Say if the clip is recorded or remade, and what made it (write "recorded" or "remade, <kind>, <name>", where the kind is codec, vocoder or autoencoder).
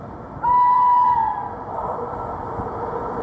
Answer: remade, vocoder, BigVGAN v2